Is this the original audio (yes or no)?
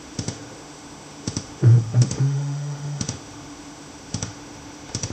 no